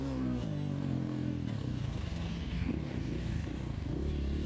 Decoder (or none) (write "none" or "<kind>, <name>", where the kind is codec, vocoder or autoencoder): codec, DAC